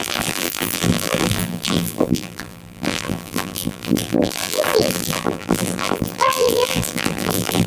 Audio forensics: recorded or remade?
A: remade